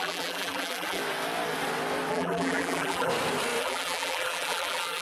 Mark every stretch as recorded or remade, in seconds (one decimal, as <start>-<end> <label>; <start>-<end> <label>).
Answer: 0.0-1.0 remade; 1.0-2.1 recorded; 2.1-3.1 remade; 3.1-3.6 recorded; 3.6-5.0 remade